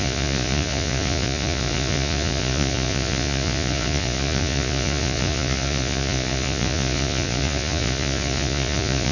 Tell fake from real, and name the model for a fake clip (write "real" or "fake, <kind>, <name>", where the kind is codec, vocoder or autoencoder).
fake, vocoder, Vocos